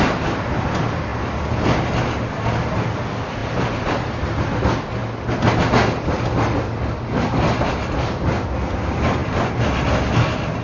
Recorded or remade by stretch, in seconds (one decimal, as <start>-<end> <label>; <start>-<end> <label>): 0.0-10.6 recorded